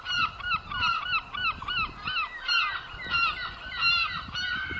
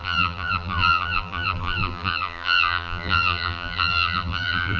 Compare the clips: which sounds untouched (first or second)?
first